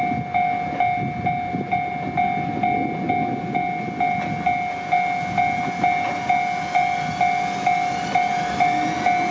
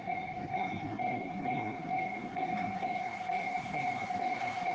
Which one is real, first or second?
first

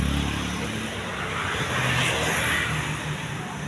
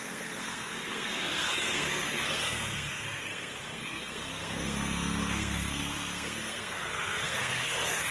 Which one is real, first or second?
first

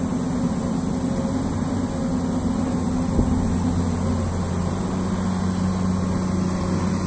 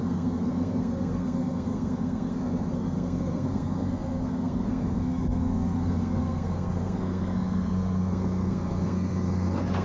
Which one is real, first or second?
first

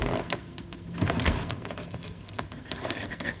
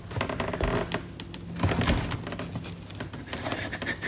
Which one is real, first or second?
second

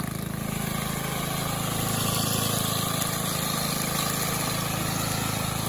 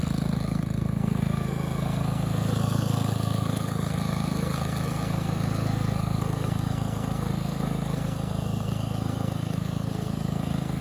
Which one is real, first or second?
first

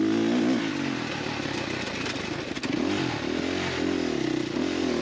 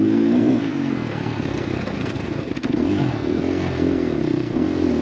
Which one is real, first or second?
first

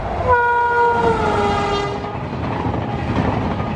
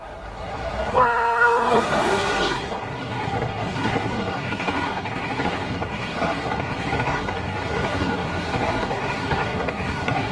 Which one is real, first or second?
first